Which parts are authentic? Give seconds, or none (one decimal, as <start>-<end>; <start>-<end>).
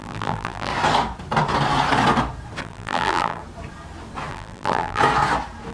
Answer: 0.7-2.6; 3.4-4.3; 5.0-5.7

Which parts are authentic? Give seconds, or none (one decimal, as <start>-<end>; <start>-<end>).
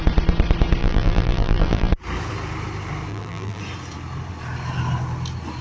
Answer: 0.0-0.8; 1.9-3.1; 3.6-5.6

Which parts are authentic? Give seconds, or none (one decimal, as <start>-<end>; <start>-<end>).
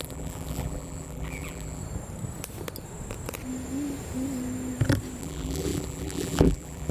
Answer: 1.8-5.2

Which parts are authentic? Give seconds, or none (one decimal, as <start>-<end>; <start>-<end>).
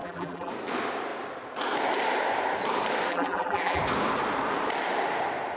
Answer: 0.5-3.1; 3.8-5.6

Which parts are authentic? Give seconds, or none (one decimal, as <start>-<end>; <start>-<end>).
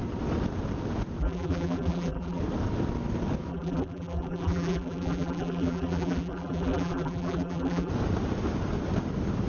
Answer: 0.0-1.2; 2.4-3.5; 7.9-9.5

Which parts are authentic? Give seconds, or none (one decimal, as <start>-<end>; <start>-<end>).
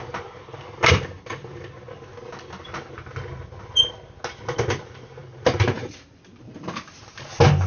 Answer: 0.0-7.7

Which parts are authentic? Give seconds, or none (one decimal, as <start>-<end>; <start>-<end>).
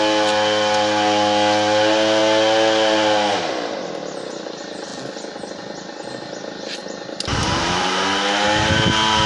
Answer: 0.0-6.8; 7.9-9.3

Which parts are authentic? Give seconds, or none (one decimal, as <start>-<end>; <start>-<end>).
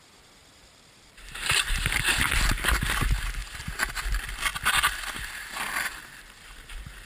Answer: 0.0-0.4; 1.8-3.4; 4.0-7.1